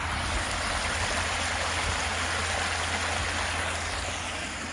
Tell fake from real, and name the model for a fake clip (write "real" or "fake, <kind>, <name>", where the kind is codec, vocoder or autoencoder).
real